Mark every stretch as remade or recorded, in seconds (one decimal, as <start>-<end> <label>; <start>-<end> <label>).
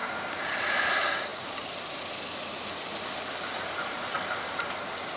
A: 0.0-0.9 remade; 0.9-1.3 recorded; 1.3-2.0 remade; 2.0-3.5 recorded; 3.5-4.6 remade; 4.6-5.2 recorded